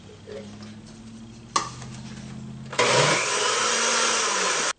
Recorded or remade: recorded